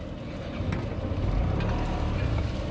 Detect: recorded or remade recorded